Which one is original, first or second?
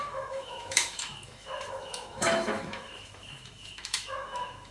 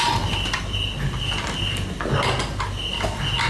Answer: second